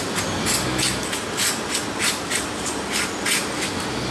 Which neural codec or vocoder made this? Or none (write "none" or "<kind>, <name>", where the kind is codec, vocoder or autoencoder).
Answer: none